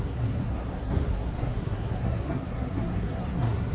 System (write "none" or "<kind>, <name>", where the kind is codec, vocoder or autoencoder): codec, SNAC